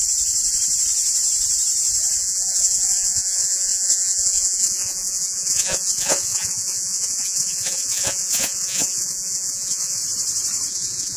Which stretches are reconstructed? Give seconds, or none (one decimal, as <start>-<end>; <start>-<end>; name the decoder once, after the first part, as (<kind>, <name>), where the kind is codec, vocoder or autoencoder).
2.2-10.0 (vocoder, Vocos); 10.7-11.2

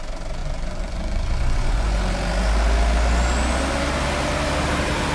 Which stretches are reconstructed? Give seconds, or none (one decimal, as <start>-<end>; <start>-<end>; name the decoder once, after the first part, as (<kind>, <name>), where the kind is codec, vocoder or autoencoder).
0.4-2.0 (vocoder, Vocos)

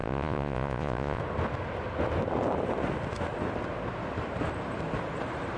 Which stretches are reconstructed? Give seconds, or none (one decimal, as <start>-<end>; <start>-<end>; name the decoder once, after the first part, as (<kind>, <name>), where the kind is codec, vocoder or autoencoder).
0.0-1.2 (vocoder, Vocos)

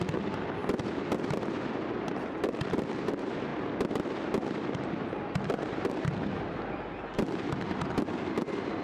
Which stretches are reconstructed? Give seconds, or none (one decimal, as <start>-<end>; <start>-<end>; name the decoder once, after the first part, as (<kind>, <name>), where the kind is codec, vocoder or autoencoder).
none